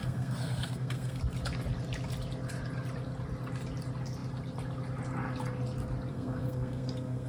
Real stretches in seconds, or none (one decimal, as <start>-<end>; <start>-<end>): 1.2-6.1